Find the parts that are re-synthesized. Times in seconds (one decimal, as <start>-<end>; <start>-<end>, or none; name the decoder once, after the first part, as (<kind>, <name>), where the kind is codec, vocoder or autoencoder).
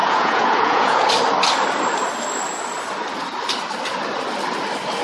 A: 0.0-1.1 (vocoder, Vocos)